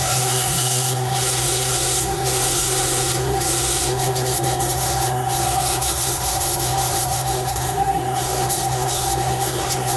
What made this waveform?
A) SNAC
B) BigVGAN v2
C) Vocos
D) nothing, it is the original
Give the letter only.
A